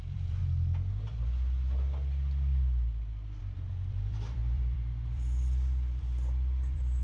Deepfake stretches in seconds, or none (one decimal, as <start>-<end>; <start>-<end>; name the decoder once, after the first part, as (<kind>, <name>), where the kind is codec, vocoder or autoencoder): 0.0-0.4 (vocoder, BigVGAN v2); 3.4-7.0